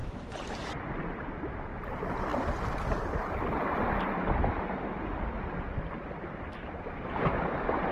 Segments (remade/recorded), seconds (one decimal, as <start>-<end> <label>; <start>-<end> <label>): 0.0-0.9 remade; 0.9-7.9 recorded